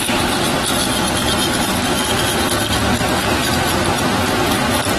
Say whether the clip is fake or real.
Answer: real